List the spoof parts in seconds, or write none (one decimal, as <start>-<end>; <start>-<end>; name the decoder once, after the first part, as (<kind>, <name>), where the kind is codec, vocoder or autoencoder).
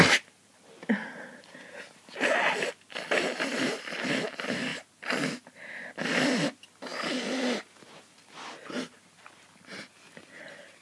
none